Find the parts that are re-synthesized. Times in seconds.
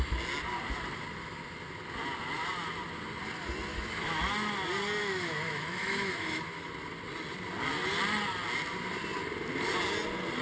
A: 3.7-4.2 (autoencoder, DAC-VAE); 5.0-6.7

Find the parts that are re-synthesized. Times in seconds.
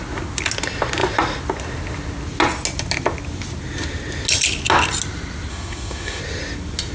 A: 5.5-6.2 (autoencoder, DAC-VAE)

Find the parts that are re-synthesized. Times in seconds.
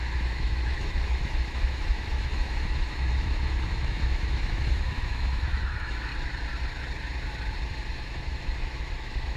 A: 0.0-6.1 (autoencoder, DAC-VAE); 7.9-9.4